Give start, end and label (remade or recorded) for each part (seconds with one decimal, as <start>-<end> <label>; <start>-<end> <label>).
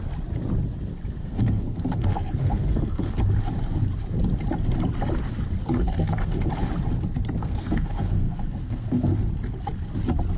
0.0-1.2 recorded; 1.2-3.2 remade; 3.2-5.6 recorded; 5.6-6.5 remade; 6.5-7.4 recorded; 7.4-9.2 remade; 9.2-10.4 recorded